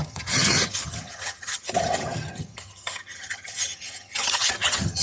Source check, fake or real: fake